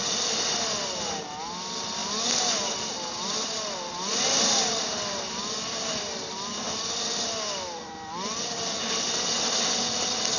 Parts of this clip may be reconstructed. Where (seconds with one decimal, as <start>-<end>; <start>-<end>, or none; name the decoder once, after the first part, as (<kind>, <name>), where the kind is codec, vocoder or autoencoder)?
none